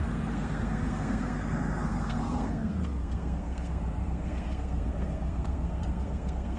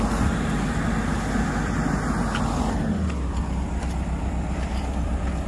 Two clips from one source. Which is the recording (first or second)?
second